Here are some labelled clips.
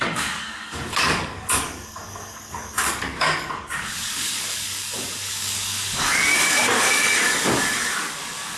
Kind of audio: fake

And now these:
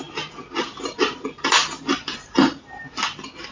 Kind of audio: real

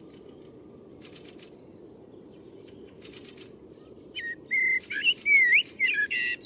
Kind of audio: fake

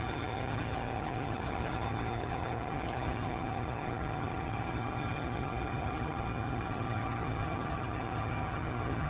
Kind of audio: fake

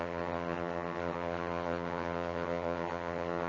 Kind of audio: fake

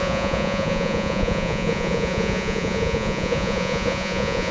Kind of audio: fake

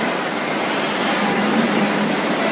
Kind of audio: real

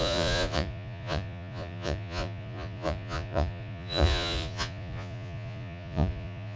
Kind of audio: fake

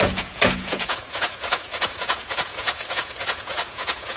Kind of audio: fake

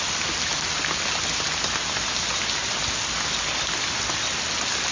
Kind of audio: real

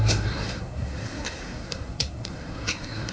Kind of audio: fake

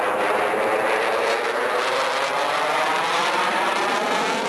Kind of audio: real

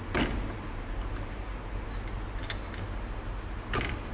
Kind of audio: real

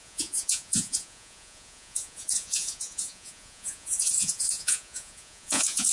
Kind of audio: fake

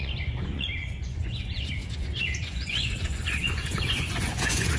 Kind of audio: fake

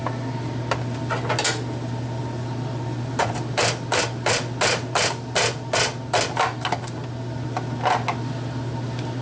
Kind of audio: real